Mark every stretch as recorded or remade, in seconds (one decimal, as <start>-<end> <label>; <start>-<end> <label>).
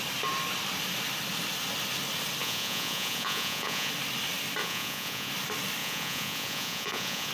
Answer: 0.0-2.4 recorded; 2.4-3.9 remade; 3.9-4.6 recorded; 4.6-5.3 remade; 5.3-5.8 recorded; 5.8-7.3 remade